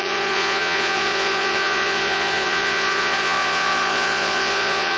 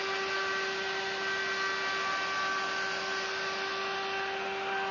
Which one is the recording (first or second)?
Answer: second